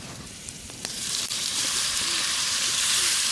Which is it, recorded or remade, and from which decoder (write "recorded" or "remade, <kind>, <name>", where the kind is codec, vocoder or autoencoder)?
remade, vocoder, BigVGAN v2